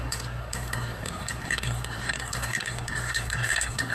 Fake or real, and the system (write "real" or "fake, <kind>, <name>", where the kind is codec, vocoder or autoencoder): fake, codec, SNAC